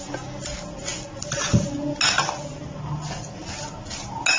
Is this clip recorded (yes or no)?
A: yes